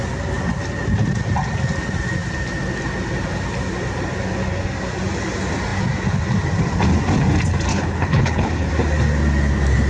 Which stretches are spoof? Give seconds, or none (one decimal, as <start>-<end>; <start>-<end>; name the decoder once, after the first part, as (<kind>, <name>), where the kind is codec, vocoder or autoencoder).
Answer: 7.7-8.7 (codec, HILCodec)